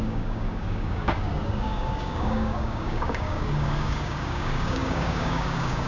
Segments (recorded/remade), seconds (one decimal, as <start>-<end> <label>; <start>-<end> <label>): 0.0-5.9 remade